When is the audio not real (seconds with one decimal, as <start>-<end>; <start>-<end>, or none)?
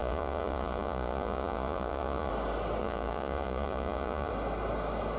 0.0-2.3; 2.8-4.3